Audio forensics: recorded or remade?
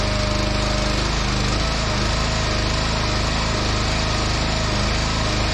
recorded